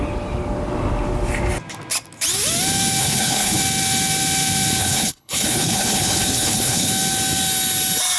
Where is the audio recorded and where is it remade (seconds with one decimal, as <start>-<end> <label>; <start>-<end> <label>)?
0.0-3.0 recorded; 3.0-3.6 remade; 3.6-4.8 recorded; 4.8-6.9 remade; 6.9-8.2 recorded